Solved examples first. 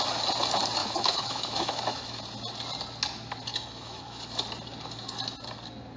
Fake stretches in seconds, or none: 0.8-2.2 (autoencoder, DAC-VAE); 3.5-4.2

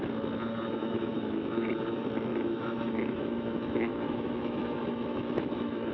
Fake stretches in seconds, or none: 0.8-1.7 (autoencoder, DAC-VAE); 2.3-5.9

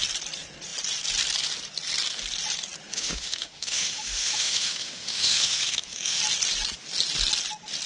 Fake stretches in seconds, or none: 2.9-6.2 (autoencoder, DAC-VAE)

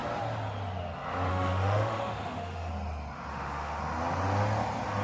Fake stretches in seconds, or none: 1.3-2.7 (autoencoder, DAC-VAE); 3.3-3.8

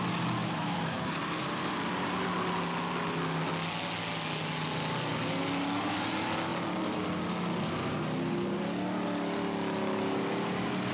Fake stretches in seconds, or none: 0.4-1.0 (autoencoder, DAC-VAE)